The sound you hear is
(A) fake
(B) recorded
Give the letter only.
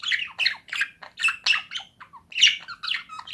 B